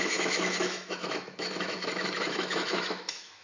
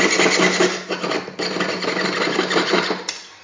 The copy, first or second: first